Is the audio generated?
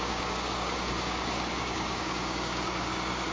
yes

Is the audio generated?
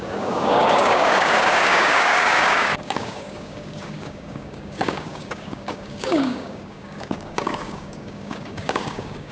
yes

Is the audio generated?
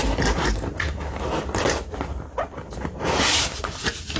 no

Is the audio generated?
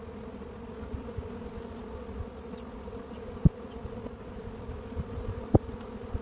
no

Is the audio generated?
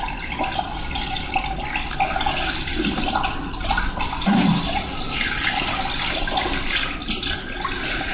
no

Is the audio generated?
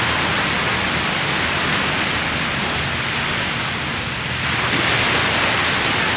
no